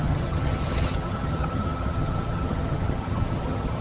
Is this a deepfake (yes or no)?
yes